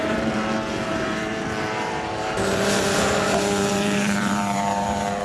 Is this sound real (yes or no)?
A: no